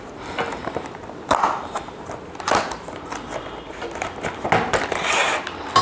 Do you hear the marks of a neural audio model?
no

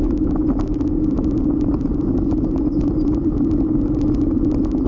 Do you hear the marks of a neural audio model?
no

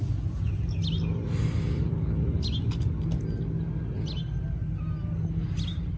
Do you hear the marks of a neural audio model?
no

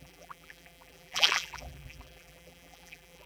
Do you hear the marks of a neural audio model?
yes